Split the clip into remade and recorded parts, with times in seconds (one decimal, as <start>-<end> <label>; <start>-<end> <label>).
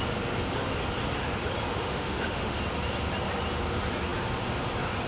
0.0-1.7 recorded; 1.7-2.6 remade; 2.6-5.1 recorded